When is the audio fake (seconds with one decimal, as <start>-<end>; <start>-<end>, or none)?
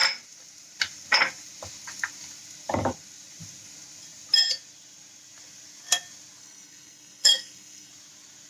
6.4-7.9